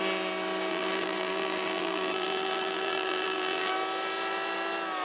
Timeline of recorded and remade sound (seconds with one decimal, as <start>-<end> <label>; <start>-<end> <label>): 0.0-0.7 recorded; 0.7-3.7 remade; 3.7-5.0 recorded